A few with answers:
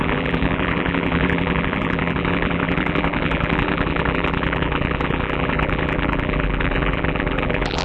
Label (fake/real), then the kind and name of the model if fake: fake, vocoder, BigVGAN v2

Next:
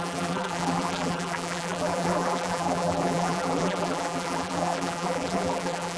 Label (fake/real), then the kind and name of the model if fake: fake, vocoder, BigVGAN v2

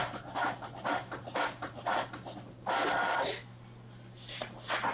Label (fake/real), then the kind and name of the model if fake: real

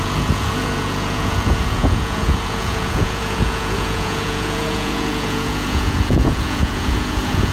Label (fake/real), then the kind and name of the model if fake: fake, vocoder, Vocos